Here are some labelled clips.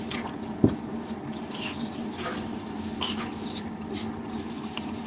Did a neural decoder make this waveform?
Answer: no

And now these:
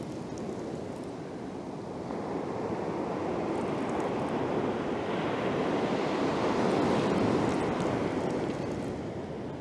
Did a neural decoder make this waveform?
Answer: no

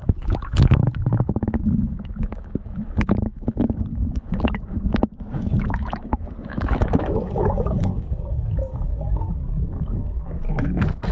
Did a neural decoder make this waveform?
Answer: yes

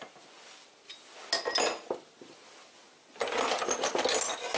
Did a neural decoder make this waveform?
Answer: no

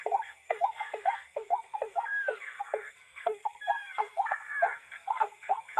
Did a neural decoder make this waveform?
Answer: yes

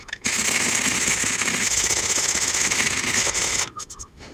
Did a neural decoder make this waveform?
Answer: yes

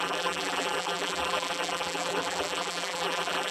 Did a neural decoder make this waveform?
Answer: yes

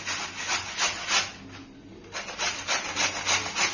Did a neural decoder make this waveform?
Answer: no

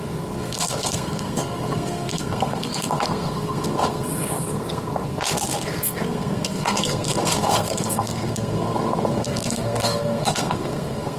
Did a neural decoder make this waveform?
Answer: yes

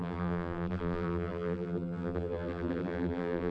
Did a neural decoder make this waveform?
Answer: yes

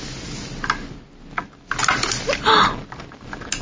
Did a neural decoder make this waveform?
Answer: no